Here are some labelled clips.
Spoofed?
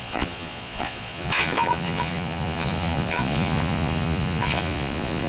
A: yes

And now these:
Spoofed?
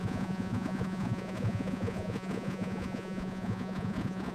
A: yes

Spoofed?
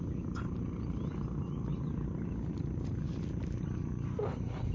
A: no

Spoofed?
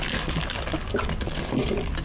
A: no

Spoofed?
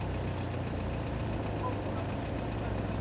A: no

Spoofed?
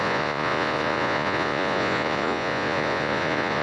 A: yes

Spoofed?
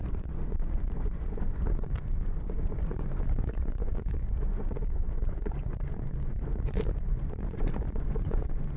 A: yes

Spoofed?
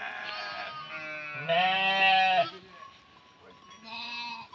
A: no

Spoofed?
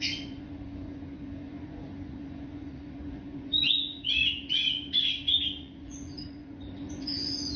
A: yes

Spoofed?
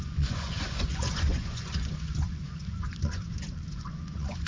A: yes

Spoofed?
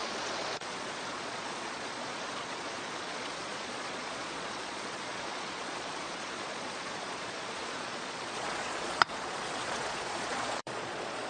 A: yes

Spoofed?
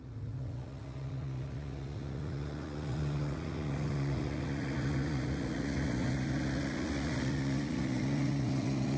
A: yes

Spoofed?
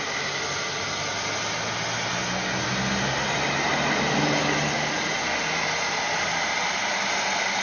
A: no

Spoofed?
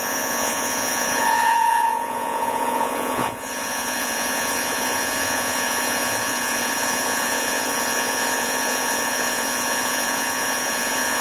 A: yes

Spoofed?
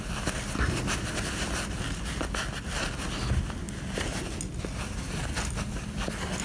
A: no